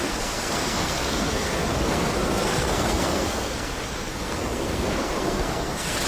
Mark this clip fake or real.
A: fake